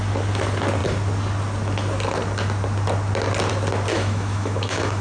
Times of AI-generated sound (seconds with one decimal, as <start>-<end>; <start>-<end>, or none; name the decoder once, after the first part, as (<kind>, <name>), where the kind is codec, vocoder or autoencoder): 3.9-5.0 (autoencoder, DAC-VAE)